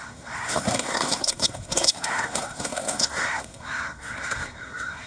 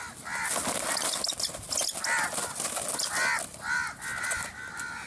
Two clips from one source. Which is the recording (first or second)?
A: second